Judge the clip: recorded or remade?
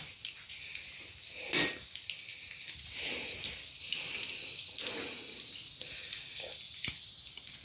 recorded